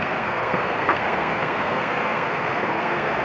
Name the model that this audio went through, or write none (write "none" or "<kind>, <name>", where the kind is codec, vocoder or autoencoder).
codec, SNAC